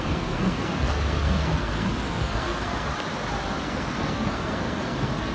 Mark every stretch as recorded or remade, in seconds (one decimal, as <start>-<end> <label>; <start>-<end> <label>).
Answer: 0.0-2.9 remade; 2.9-3.6 recorded; 3.6-5.3 remade

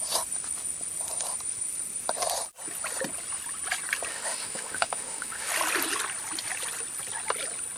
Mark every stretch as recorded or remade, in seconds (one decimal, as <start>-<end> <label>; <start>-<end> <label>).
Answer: 0.0-4.1 recorded; 4.1-5.5 remade; 5.5-7.8 recorded

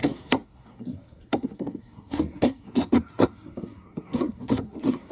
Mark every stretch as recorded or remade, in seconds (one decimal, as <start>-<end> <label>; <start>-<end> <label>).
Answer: 0.0-5.1 remade

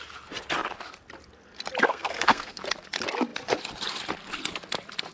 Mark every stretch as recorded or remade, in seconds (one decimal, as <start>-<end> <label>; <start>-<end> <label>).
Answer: 0.0-1.9 recorded; 1.9-2.6 remade; 2.6-5.1 recorded

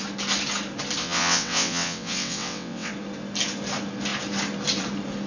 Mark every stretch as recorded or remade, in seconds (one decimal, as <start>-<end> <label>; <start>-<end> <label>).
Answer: 0.0-1.0 recorded; 1.0-2.9 remade; 2.9-5.3 recorded

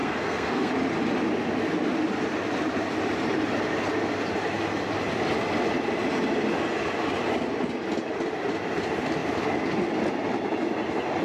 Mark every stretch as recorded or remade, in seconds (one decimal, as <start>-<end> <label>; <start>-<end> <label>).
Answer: 0.0-0.7 remade; 0.7-11.2 recorded

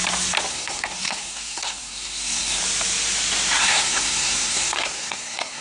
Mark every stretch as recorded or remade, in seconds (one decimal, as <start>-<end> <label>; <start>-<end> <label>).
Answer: 0.0-0.5 recorded; 0.5-2.6 remade; 2.6-3.6 recorded; 3.6-5.6 remade